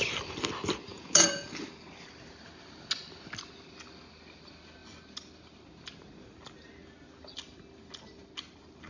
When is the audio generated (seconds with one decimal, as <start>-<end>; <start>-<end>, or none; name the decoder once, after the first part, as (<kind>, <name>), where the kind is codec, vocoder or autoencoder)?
0.9-1.5 (vocoder, Vocos)